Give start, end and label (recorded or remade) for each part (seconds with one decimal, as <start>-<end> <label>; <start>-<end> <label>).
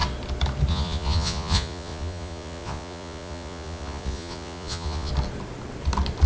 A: 0.0-0.7 recorded; 0.7-5.1 remade; 5.1-6.3 recorded